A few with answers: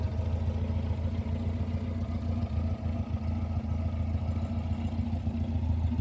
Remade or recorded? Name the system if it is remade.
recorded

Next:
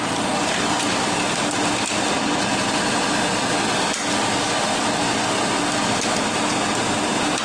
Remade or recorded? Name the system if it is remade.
recorded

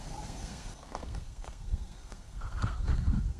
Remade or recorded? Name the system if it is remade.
remade, codec, SNAC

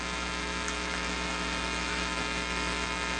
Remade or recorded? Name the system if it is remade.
remade, autoencoder, DAC-VAE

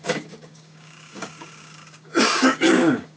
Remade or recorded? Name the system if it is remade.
remade, codec, DAC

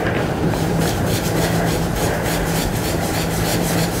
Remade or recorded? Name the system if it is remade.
remade, vocoder, BigVGAN v2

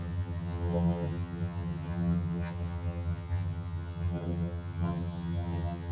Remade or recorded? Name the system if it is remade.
remade, vocoder, HiFi-GAN